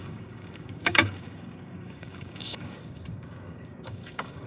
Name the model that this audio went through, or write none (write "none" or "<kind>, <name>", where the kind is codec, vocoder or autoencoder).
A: codec, DAC